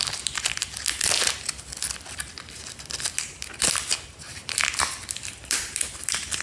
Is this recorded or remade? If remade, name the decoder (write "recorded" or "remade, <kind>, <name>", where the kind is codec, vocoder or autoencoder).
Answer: recorded